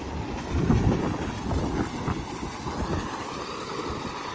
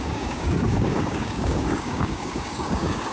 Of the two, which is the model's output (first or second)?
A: second